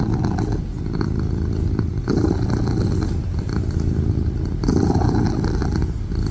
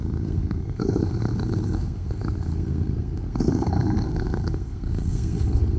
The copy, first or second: second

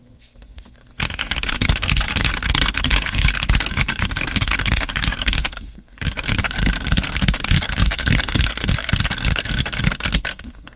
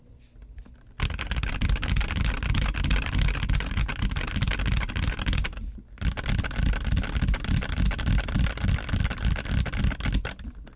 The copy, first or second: first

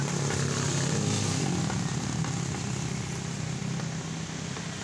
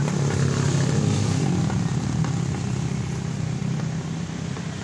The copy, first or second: second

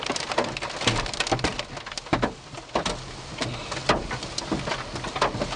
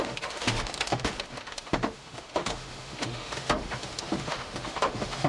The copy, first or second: second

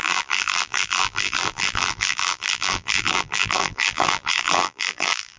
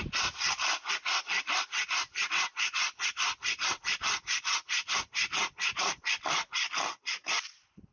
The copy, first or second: first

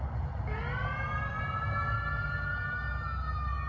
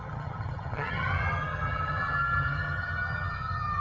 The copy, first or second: second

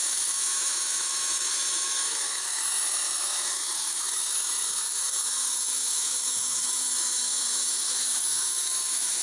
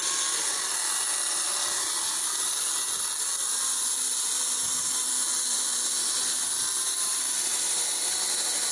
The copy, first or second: first